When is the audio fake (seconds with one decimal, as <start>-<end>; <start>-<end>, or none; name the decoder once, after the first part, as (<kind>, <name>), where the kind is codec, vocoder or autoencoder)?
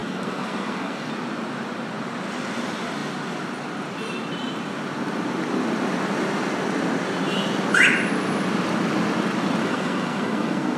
0.0-1.1 (codec, SNAC); 9.6-10.8